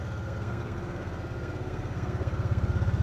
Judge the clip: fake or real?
fake